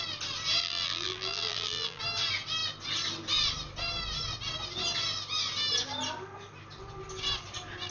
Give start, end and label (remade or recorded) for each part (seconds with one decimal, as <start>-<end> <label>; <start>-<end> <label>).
0.0-0.6 recorded; 0.6-2.0 remade; 2.0-7.9 recorded